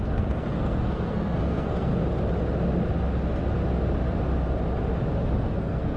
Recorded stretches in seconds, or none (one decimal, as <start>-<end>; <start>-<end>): 1.9-5.5